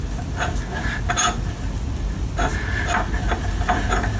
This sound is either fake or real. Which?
real